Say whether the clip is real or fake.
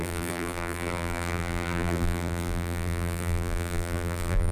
fake